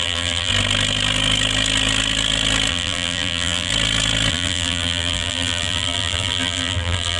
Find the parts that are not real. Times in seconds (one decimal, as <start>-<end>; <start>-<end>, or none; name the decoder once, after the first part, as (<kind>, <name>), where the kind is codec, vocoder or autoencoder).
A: 0.0-0.5 (vocoder, BigVGAN v2); 2.7-3.7; 4.3-7.2

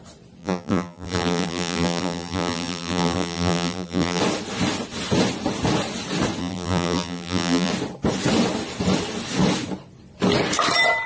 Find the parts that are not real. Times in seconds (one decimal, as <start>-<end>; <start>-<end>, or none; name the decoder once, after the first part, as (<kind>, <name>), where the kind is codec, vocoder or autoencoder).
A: 0.4-4.2 (vocoder, BigVGAN v2); 6.4-7.7

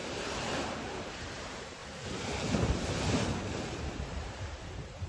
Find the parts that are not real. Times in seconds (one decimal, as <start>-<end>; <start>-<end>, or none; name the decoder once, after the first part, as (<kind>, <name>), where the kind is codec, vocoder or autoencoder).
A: 0.0-1.8 (vocoder, BigVGAN v2); 2.7-5.1

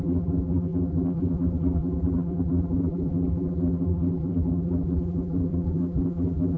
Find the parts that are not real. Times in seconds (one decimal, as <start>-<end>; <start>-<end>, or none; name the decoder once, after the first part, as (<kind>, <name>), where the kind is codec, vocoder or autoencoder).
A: 0.0-6.6 (vocoder, BigVGAN v2)